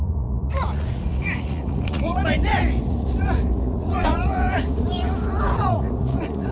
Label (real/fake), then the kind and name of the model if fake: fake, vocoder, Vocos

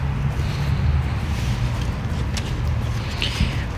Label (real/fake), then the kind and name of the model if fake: real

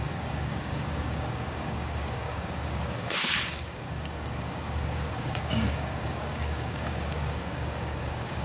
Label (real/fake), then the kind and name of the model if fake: fake, codec, DAC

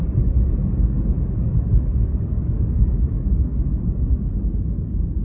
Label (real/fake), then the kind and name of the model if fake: fake, codec, DAC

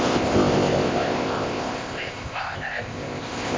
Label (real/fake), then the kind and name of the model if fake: fake, codec, ZipCodec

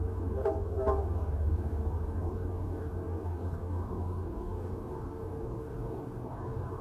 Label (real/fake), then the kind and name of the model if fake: fake, codec, DAC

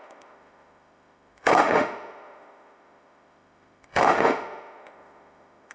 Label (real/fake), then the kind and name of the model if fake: fake, autoencoder, DAC-VAE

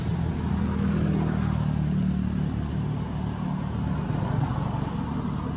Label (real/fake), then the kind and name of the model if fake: real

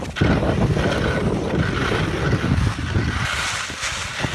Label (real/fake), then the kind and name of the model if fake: real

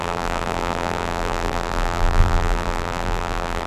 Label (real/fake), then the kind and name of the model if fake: fake, vocoder, BigVGAN v2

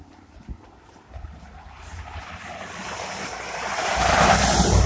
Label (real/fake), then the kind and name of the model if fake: fake, vocoder, BigVGAN v2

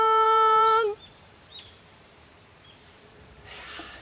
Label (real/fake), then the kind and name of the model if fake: fake, vocoder, BigVGAN v2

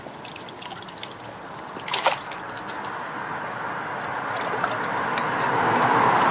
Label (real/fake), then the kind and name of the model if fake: real